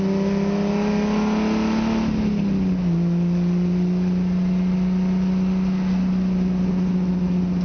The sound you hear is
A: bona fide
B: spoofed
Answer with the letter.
A